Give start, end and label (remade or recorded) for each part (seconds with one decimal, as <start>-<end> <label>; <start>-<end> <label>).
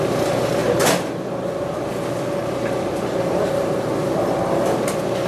0.0-0.6 recorded; 0.6-3.2 remade; 3.2-4.0 recorded; 4.0-4.8 remade; 4.8-5.3 recorded